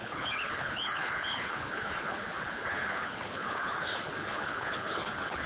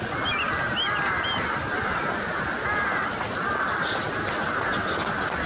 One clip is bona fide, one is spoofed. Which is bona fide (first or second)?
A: second